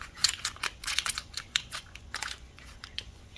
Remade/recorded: remade